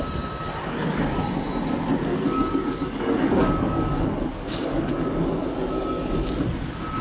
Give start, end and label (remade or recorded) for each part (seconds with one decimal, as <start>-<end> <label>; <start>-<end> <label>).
0.0-2.1 recorded; 2.1-6.3 remade; 6.3-7.0 recorded